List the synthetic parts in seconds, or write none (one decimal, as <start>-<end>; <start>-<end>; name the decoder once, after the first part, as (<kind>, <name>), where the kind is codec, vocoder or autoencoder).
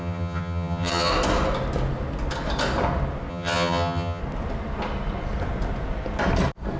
0.0-1.1 (vocoder, HiFi-GAN); 3.3-4.2